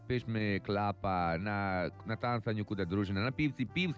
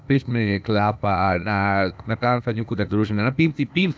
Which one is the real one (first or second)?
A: first